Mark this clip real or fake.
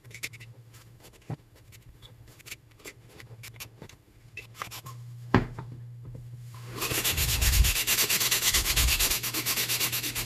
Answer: fake